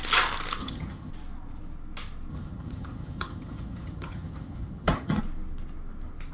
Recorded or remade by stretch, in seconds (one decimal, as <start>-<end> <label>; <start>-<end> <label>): 0.0-0.6 recorded; 0.6-1.1 remade; 1.1-2.3 recorded; 2.3-5.2 remade; 5.2-6.3 recorded